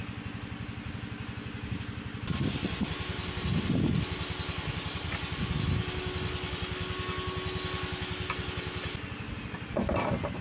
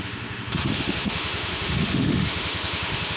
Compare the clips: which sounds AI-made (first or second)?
second